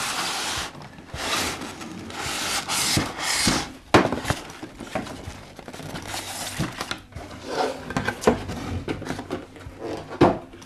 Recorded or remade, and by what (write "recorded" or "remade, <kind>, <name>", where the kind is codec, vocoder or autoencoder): recorded